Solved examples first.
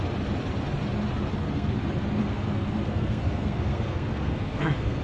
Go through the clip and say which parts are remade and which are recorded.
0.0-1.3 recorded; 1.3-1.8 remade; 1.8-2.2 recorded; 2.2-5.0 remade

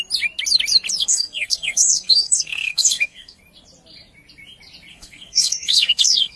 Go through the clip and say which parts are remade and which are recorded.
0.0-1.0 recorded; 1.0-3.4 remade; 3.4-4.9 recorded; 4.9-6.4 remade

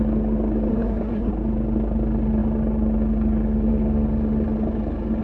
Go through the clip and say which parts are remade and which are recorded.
0.0-0.7 recorded; 0.7-1.3 remade; 1.3-5.2 recorded

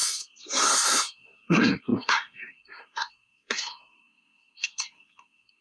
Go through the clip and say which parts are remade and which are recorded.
0.0-5.6 remade

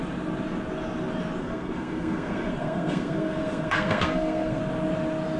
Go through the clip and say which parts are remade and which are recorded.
0.0-1.4 recorded; 1.4-4.6 remade; 4.6-5.4 recorded